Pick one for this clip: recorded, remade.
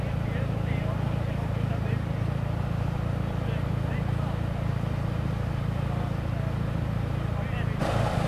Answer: recorded